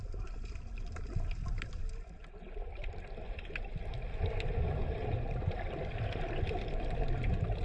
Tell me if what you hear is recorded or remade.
recorded